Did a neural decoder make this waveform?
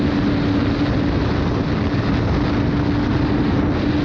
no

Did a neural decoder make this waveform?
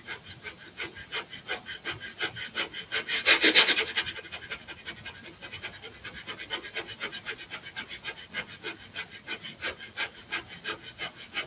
no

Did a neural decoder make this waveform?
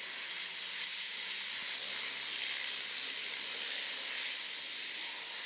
no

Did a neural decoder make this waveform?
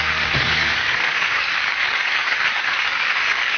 yes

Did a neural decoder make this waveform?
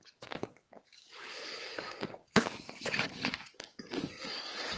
yes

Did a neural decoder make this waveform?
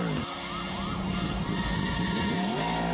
no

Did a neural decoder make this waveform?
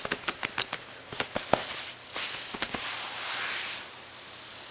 no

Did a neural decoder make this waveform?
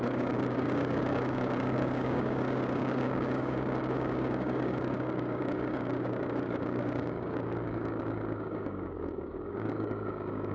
yes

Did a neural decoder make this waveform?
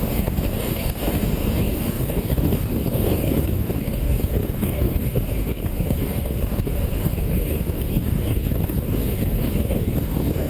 yes